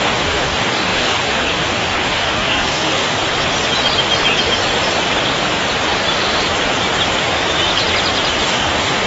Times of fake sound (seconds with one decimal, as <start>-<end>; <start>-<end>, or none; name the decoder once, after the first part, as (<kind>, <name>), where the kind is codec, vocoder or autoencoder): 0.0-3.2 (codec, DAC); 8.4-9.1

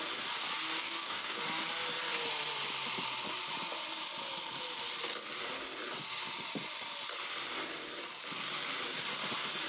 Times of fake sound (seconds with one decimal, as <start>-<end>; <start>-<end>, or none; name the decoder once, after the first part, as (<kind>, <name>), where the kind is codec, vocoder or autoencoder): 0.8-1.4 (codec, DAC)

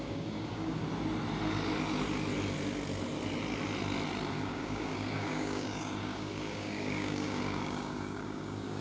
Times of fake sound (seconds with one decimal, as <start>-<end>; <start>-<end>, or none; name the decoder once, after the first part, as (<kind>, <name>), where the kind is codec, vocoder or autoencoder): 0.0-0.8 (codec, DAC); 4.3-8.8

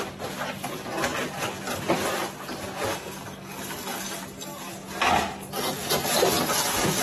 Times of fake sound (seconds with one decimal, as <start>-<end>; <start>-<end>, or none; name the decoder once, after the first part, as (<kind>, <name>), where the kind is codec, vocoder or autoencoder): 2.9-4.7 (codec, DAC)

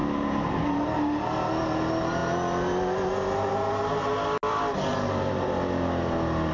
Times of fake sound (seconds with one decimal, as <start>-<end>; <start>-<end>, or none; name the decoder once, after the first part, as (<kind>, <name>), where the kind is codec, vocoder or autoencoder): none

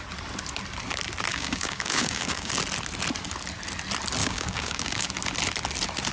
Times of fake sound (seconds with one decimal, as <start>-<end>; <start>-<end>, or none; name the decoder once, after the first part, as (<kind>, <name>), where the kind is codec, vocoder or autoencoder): 1.3-2.5 (codec, DAC); 4.2-5.1

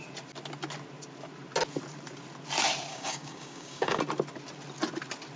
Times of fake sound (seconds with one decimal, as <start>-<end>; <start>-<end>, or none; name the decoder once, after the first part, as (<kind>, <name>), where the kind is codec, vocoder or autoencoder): 2.9-4.0 (codec, DAC)

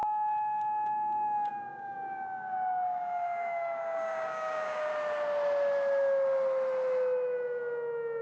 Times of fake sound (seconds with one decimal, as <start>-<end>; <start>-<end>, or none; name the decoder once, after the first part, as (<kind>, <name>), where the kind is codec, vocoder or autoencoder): 0.0-4.9 (codec, DAC)